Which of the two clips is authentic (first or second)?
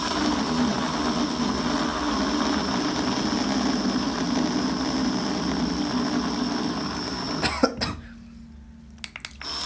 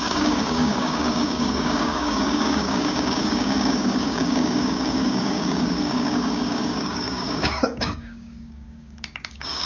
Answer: first